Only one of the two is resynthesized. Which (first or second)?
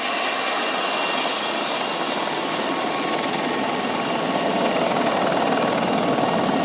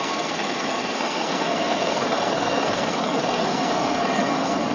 second